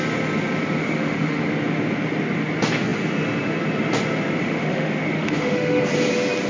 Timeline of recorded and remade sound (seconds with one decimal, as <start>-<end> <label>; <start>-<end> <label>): 0.0-0.8 recorded; 0.8-1.4 remade; 1.4-4.4 recorded; 4.4-5.8 remade; 5.8-6.5 recorded